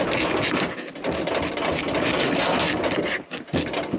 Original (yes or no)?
yes